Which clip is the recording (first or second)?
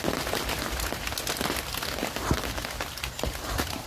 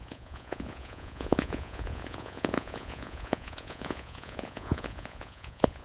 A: first